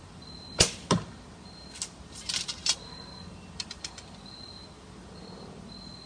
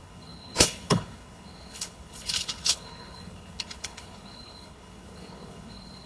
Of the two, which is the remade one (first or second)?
second